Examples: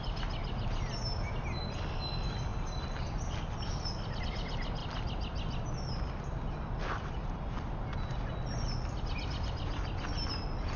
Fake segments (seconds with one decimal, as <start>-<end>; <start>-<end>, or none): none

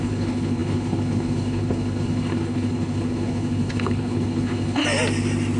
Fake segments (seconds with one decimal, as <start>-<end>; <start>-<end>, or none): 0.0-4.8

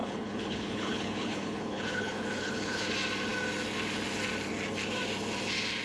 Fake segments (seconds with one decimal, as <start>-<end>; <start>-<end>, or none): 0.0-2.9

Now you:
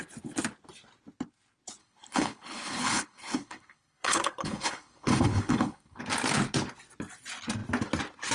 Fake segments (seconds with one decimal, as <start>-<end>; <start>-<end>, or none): 1.8-6.0

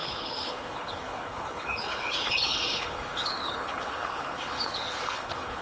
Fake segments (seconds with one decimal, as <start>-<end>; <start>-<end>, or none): 0.0-5.6

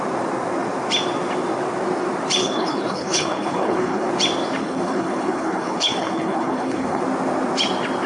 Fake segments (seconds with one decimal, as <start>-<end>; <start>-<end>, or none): 2.4-4.1; 4.6-7.0

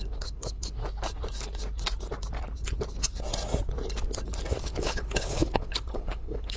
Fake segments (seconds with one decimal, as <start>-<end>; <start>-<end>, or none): 0.0-0.8; 4.6-6.6